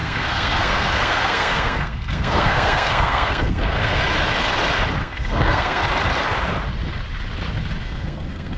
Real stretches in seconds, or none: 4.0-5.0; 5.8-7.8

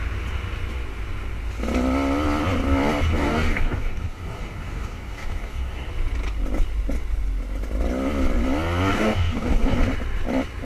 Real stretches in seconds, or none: 0.0-3.1; 5.9-8.9; 9.8-10.6

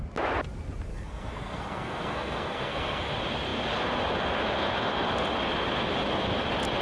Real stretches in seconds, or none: 0.0-0.9; 3.1-6.8